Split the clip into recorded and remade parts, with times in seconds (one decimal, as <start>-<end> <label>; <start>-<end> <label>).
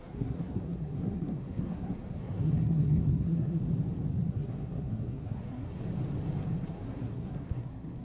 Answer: 0.0-3.6 remade; 3.6-4.3 recorded; 4.3-5.8 remade; 5.8-6.7 recorded; 6.7-8.0 remade